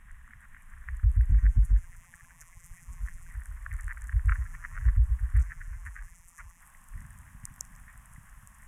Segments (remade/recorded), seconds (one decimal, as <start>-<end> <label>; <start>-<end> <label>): 0.0-1.3 recorded; 1.3-3.3 remade; 3.3-4.3 recorded; 4.3-4.9 remade; 4.9-5.4 recorded; 5.4-6.6 remade; 6.6-8.7 recorded